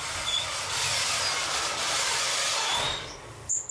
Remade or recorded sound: recorded